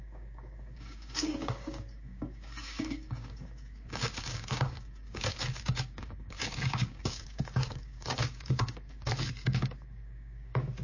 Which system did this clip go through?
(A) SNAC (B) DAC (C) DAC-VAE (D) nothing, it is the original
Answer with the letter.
B